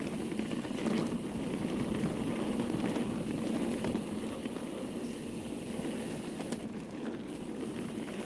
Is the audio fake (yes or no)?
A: no